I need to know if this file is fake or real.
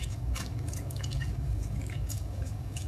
fake